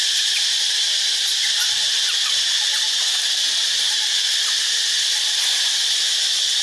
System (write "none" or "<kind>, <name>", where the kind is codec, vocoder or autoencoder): none